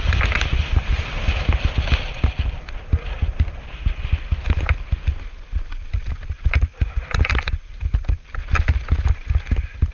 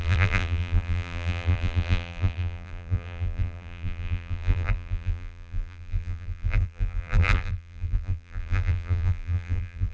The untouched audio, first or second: first